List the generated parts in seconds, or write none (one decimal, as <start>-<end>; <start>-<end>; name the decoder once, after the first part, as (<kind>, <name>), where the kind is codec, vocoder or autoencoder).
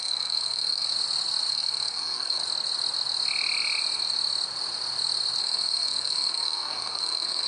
0.0-0.9 (codec, SNAC); 1.5-2.4; 5.4-7.5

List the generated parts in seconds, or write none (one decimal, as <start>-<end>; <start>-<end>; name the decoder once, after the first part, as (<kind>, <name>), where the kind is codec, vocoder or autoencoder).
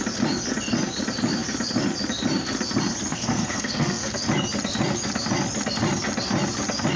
3.1-4.2 (codec, SNAC)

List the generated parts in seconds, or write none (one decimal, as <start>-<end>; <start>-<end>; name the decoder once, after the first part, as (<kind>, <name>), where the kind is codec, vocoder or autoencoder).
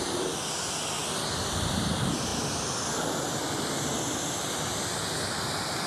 none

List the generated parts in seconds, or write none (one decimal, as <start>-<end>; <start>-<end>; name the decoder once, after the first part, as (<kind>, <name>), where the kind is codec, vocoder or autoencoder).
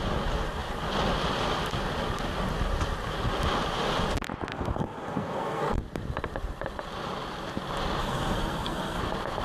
4.5-5.8 (codec, SNAC); 8.0-9.0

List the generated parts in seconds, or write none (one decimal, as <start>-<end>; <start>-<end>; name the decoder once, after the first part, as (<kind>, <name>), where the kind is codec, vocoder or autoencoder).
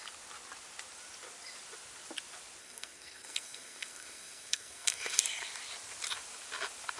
2.6-5.2 (codec, SNAC)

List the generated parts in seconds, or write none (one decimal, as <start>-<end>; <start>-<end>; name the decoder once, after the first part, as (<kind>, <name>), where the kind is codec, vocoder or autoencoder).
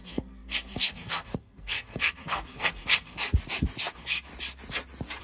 0.0-3.3 (codec, SNAC); 3.9-4.3